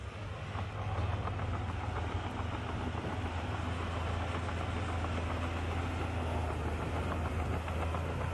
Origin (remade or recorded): recorded